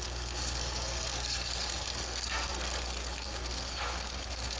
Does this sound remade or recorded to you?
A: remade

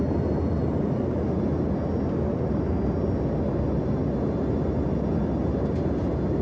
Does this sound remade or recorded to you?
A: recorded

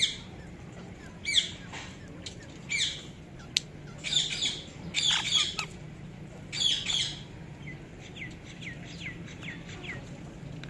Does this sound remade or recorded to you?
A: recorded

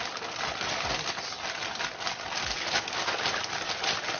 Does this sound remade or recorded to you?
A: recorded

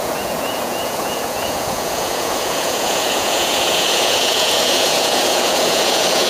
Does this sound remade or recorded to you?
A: remade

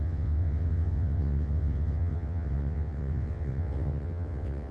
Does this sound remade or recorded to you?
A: remade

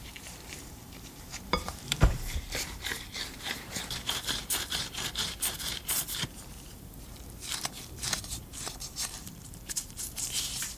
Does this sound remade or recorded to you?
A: remade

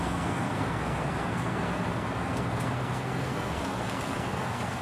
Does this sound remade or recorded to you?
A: remade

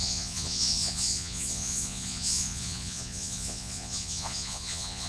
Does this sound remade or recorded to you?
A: remade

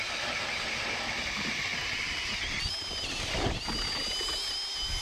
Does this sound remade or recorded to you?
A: recorded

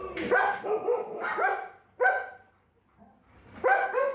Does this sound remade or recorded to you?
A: remade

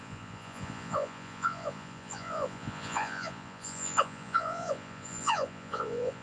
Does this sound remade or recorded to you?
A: remade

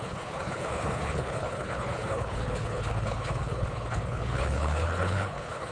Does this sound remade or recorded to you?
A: remade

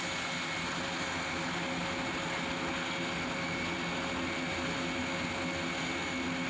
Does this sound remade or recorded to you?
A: recorded